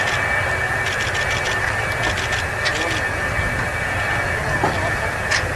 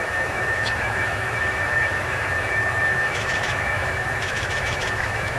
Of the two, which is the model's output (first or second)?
second